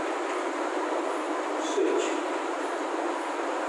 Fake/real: real